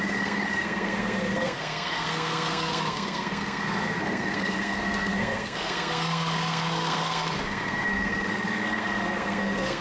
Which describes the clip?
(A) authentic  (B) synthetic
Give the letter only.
B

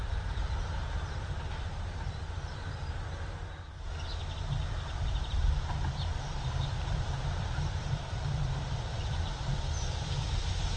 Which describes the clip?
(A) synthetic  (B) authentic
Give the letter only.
A